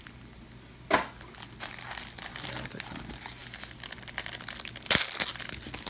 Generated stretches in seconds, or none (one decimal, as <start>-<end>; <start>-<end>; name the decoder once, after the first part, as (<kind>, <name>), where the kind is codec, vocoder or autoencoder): none